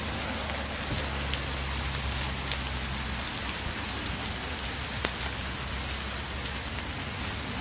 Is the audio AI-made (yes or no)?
no